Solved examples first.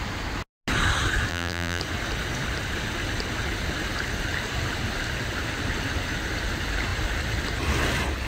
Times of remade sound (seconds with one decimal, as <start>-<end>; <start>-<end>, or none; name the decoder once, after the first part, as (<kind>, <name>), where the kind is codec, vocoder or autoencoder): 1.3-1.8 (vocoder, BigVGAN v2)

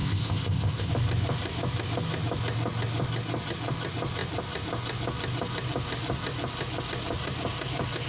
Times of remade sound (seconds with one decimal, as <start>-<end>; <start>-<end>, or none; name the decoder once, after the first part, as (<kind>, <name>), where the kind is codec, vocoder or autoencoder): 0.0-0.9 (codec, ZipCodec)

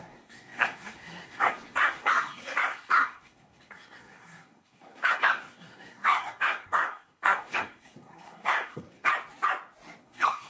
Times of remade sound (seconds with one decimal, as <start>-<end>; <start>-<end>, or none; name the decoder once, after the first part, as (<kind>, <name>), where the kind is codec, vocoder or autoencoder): 0.0-9.1 (codec, SNAC); 10.0-10.5

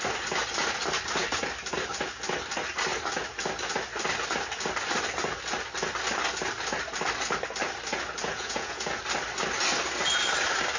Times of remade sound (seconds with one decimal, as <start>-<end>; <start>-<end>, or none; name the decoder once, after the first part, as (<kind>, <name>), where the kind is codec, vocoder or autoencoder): 8.2-9.0 (vocoder, Vocos)

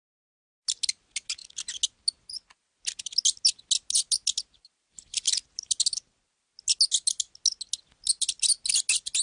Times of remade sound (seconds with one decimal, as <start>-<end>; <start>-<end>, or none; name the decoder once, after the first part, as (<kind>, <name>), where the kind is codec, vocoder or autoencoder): none